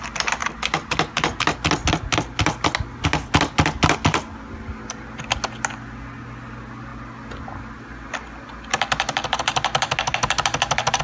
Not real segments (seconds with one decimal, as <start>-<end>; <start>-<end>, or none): none